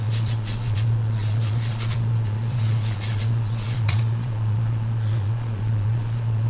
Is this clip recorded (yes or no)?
no